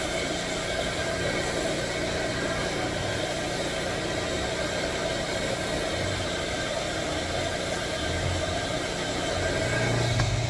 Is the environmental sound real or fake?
real